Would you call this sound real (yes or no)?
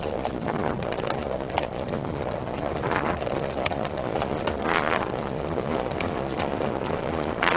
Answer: no